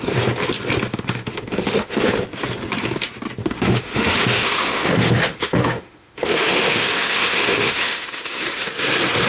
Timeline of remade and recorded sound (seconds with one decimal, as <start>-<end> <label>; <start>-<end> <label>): 0.0-0.9 recorded; 0.9-2.1 remade; 2.1-3.4 recorded; 3.4-8.7 remade; 8.7-9.3 recorded